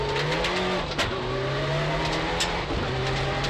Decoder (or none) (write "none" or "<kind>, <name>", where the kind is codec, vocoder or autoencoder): none